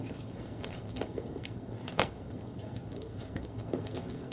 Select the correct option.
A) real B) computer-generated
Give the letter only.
B